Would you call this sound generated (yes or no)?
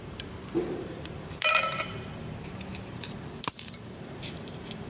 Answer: yes